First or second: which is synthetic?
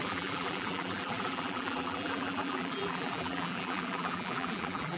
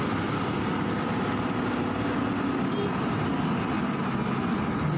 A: first